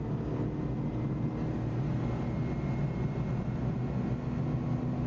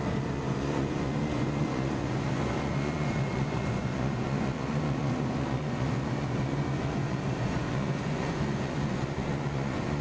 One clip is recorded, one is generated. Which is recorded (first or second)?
first